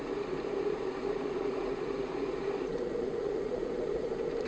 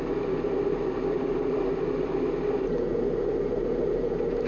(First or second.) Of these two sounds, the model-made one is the first